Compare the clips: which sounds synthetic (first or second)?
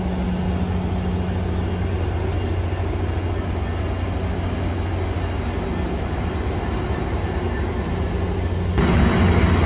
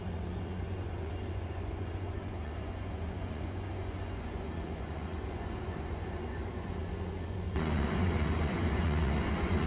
second